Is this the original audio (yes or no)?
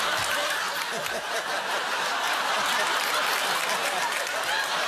yes